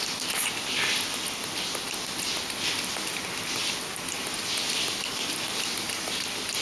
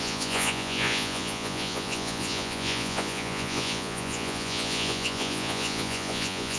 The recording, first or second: first